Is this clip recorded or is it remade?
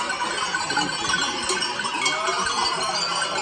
recorded